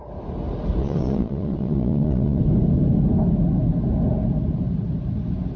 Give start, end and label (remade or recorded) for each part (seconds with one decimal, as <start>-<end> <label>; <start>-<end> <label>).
0.0-0.8 recorded; 0.8-2.4 remade; 2.4-5.6 recorded